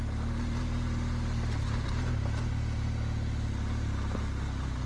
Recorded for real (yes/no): yes